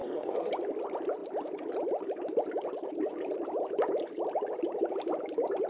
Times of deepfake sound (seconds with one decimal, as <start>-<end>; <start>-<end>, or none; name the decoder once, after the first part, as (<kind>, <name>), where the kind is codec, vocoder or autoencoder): 0.0-0.5 (codec, SNAC)